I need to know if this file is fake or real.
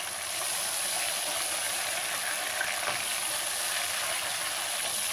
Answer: real